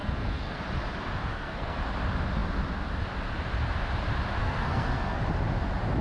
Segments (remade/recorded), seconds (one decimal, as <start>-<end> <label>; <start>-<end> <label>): 0.0-0.6 remade; 0.6-1.3 recorded; 1.3-1.8 remade; 1.8-4.4 recorded; 4.4-5.2 remade; 5.2-6.0 recorded